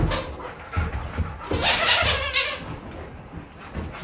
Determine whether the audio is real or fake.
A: real